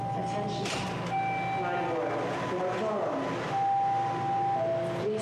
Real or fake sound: real